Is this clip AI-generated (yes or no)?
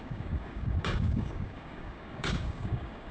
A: yes